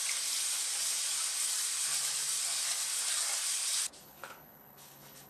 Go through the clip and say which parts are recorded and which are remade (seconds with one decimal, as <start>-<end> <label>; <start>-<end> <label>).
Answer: 0.0-4.0 recorded; 4.0-5.3 remade